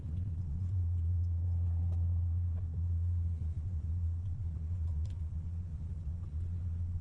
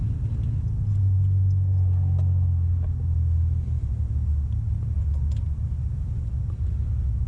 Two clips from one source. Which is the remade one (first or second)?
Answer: first